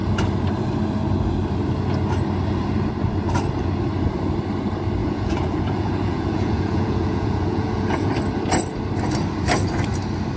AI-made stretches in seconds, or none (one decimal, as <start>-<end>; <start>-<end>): 5.0-8.1